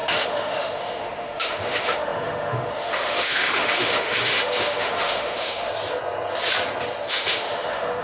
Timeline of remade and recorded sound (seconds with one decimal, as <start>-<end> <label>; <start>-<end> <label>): 0.0-5.7 remade; 5.7-7.1 recorded; 7.1-8.0 remade